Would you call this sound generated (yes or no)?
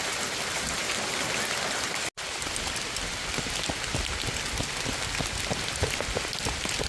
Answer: no